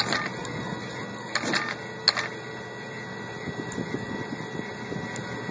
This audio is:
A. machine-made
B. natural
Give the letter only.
B